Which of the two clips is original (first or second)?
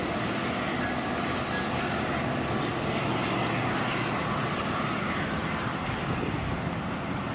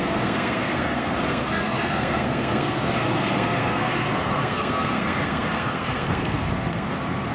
first